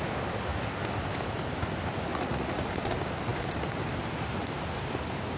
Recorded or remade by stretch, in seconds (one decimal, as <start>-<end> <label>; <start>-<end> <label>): 0.0-2.1 recorded; 2.1-2.7 remade; 2.7-5.4 recorded

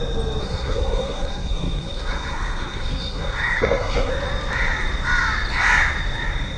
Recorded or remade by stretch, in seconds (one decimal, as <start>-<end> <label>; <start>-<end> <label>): 0.0-0.4 recorded; 0.4-4.1 remade; 4.1-6.6 recorded